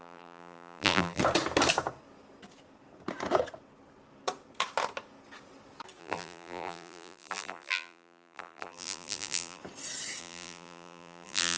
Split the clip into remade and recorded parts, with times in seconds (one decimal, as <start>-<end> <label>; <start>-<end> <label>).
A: 0.0-1.2 remade; 1.2-6.0 recorded; 6.0-9.6 remade; 9.6-10.2 recorded; 10.2-11.6 remade